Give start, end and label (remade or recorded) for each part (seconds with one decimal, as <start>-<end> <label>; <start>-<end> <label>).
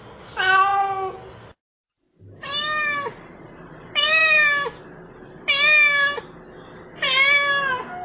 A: 0.0-8.0 recorded